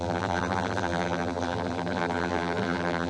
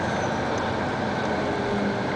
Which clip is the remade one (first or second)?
first